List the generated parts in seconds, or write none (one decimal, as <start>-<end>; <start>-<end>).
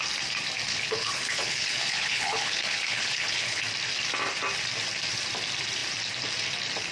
0.7-3.6